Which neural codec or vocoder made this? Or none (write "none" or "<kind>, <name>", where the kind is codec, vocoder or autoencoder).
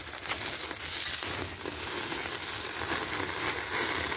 none